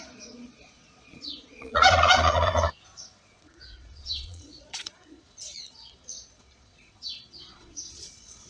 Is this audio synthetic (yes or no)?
yes